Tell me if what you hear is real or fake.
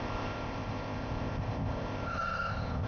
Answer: fake